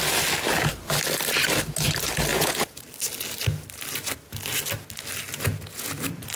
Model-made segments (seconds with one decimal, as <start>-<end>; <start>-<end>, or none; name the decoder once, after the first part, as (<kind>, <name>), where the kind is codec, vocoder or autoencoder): 2.3-2.8 (vocoder, Vocos); 5.5-6.0